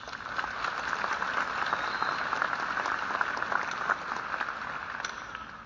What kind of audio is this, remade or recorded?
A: recorded